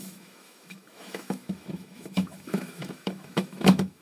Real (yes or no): no